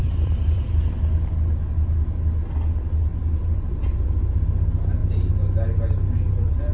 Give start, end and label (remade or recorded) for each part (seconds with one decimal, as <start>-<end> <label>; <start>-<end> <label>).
0.0-0.8 remade; 0.8-6.7 recorded